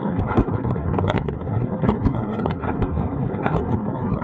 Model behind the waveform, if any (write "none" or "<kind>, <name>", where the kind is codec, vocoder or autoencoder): codec, SNAC